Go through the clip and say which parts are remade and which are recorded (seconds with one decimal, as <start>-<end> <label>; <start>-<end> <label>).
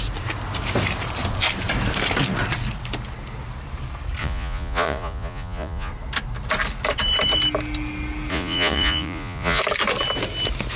0.0-4.2 recorded; 4.2-5.9 remade; 5.9-8.3 recorded; 8.3-9.6 remade; 9.6-10.8 recorded